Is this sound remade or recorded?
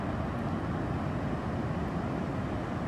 recorded